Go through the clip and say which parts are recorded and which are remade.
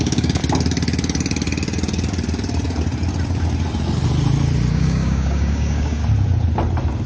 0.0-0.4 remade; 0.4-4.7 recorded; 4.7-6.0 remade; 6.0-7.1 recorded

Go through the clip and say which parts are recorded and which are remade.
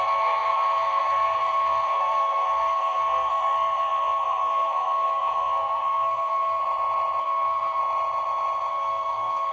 0.0-6.6 remade; 6.6-7.2 recorded; 7.2-7.8 remade; 7.8-8.7 recorded; 8.7-9.5 remade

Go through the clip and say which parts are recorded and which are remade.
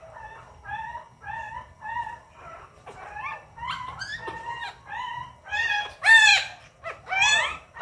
0.0-6.3 remade; 6.3-7.0 recorded; 7.0-7.8 remade